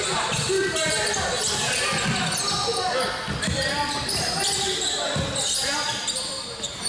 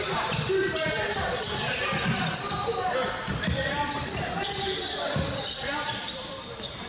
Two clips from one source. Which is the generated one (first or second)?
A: second